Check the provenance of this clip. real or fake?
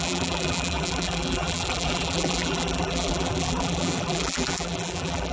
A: fake